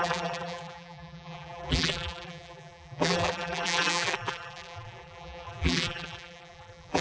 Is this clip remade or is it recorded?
remade